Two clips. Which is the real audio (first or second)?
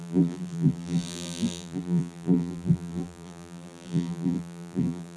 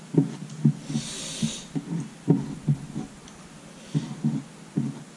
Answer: second